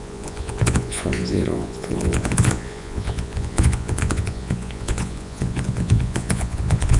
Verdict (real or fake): fake